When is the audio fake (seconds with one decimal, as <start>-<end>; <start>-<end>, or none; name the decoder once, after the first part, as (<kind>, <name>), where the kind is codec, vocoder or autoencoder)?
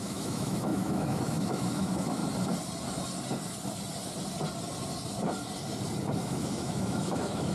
0.0-2.2 (autoencoder, DAC-VAE); 6.2-7.5